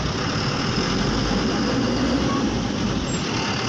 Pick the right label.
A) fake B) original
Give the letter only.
B